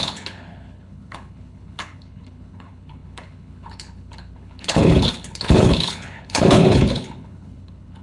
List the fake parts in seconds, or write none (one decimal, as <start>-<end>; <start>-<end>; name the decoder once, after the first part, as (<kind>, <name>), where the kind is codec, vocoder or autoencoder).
0.0-8.0 (codec, HILCodec)